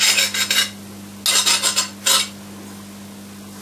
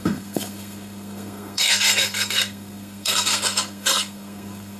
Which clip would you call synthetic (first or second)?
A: second